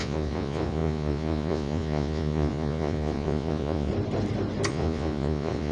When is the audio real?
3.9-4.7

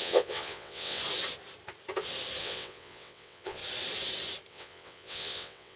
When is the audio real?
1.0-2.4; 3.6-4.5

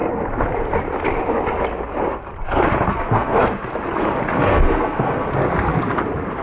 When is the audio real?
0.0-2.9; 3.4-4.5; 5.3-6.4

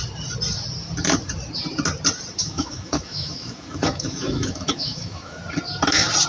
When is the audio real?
0.0-2.4; 5.4-6.3